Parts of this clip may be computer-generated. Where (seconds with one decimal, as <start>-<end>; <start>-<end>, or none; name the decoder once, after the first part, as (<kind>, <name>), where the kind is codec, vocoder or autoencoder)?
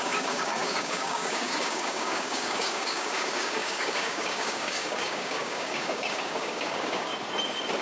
0.0-7.1 (codec, DAC)